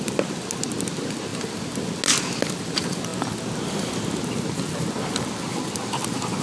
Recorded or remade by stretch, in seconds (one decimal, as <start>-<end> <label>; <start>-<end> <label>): 0.0-6.4 recorded